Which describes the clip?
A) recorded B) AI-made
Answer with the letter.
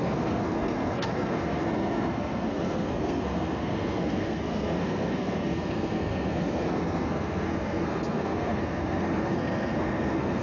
B